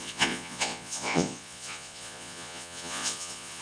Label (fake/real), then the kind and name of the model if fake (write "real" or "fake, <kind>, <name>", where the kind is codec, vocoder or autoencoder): fake, vocoder, Vocos